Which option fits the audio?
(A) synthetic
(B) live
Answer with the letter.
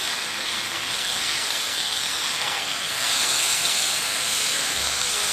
A